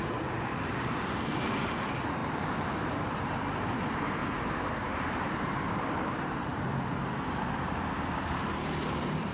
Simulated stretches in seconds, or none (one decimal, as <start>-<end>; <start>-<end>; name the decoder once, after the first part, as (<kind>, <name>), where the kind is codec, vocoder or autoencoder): 0.0-4.2 (vocoder, BigVGAN v2); 4.9-9.3